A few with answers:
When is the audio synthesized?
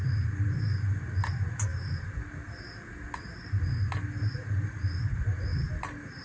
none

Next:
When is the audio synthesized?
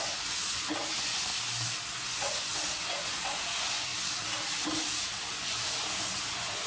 0.0-1.3; 2.0-3.9; 5.2-6.7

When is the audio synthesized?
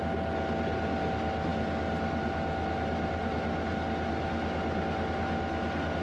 none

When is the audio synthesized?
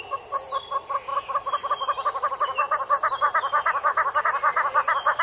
none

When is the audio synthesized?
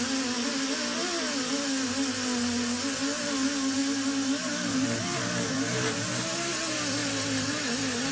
none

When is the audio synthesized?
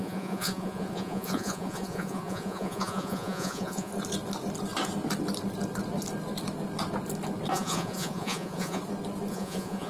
0.0-3.9; 7.5-8.8; 9.3-9.9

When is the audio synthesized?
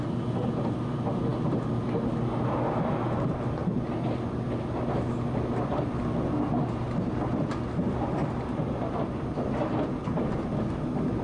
none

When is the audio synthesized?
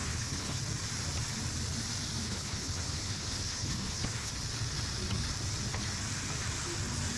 0.0-0.6; 2.2-4.3